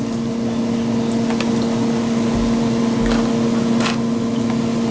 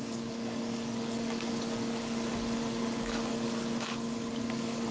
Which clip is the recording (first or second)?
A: first